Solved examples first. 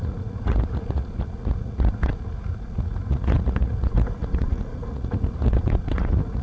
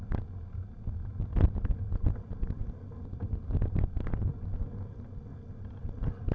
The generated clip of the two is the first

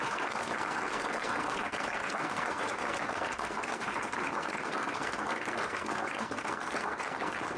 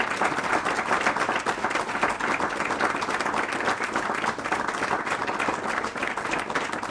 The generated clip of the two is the first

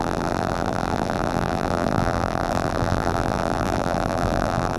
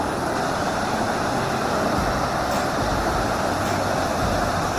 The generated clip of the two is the first